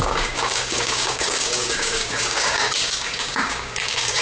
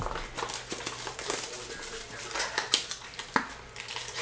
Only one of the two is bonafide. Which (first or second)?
second